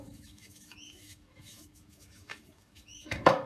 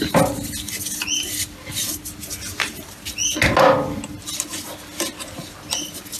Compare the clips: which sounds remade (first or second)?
first